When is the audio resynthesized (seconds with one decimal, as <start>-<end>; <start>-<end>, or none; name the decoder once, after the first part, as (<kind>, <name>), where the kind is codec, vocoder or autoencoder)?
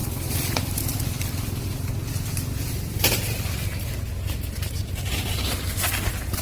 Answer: 0.0-1.0 (vocoder, BigVGAN v2)